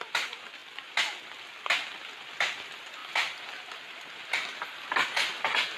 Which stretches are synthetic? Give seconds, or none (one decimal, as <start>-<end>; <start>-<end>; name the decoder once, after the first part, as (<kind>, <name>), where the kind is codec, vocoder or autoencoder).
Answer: none